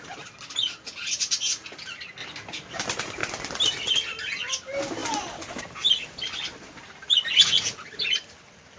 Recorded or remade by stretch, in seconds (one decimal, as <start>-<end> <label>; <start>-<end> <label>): 0.0-8.8 recorded